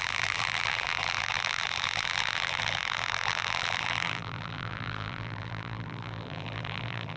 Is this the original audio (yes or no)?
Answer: no